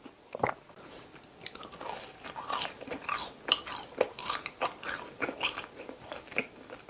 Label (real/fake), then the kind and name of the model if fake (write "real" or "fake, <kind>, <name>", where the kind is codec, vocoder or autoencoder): real